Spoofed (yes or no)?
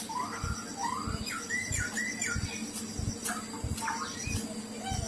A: no